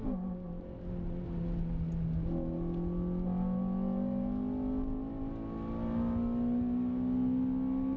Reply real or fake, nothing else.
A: real